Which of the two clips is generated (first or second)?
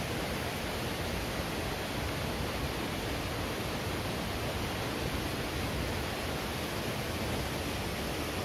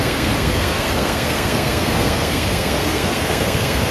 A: second